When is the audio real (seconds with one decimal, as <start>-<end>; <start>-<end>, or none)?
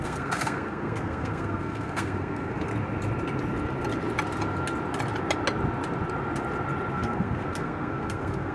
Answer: 2.7-6.9